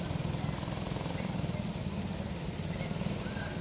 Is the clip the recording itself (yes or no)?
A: yes